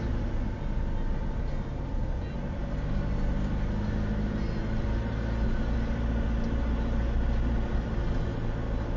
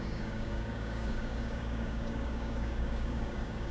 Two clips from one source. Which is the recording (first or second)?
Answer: first